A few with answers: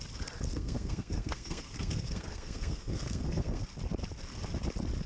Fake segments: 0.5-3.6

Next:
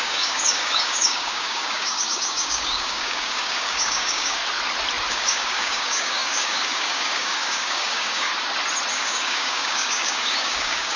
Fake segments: 0.0-4.4; 5.1-8.3; 8.9-11.0

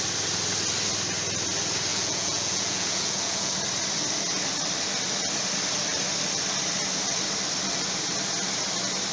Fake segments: 1.9-3.5

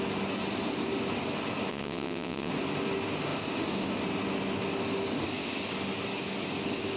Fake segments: 1.7-2.5

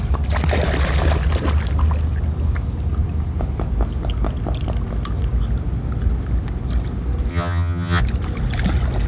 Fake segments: 7.3-8.0

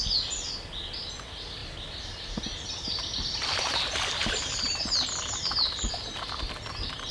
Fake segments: 1.6-5.9